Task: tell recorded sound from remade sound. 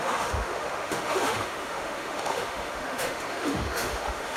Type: remade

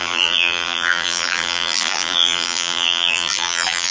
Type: remade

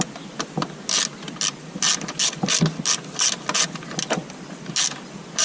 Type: recorded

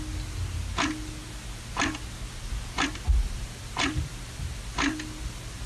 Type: recorded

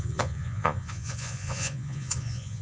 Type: remade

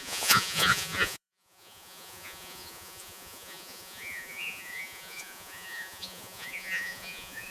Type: remade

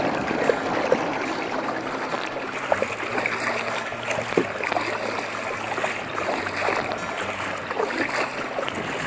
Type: recorded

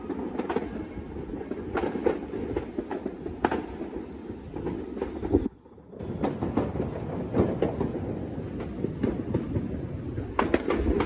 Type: recorded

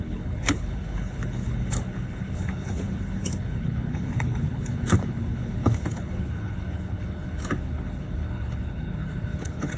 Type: remade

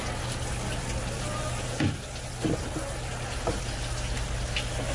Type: recorded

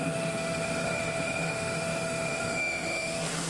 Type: remade